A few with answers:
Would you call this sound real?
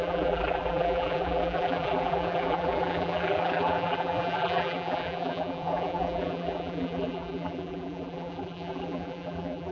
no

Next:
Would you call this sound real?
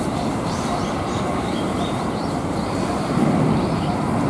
no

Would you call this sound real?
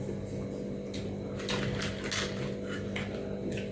yes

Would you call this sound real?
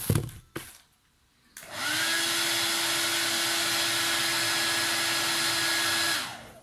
yes